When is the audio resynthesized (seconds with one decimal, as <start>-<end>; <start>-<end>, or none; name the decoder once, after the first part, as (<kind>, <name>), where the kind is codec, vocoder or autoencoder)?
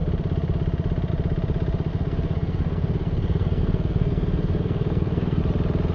1.9-5.4 (codec, SNAC)